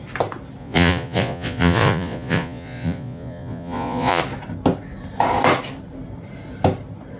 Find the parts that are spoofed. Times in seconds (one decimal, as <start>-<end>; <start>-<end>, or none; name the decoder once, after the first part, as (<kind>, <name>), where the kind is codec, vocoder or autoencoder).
0.6-4.2 (vocoder, Vocos)

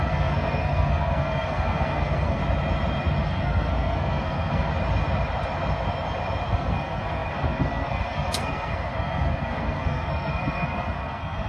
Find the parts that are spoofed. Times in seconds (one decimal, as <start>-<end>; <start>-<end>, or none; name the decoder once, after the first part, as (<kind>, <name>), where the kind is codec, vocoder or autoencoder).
0.0-2.4 (codec, SNAC); 3.2-4.7; 6.5-11.5

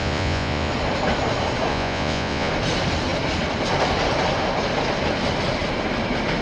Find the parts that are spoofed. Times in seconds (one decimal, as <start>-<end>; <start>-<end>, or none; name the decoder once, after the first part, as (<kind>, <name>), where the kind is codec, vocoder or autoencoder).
0.0-0.7 (vocoder, Vocos); 1.7-2.5

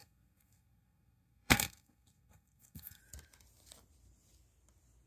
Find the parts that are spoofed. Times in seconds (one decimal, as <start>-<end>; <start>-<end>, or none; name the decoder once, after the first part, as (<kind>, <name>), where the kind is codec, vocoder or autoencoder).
0.0-3.0 (codec, SNAC)

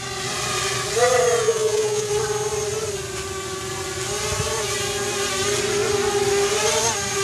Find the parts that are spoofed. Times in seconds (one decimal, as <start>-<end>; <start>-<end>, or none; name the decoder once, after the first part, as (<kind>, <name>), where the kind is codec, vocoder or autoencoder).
1.4-2.1 (vocoder, Vocos)

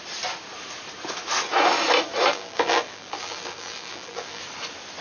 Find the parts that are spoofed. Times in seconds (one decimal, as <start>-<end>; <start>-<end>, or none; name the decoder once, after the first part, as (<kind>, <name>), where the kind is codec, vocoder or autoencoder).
2.3-4.4 (vocoder, BigVGAN v2)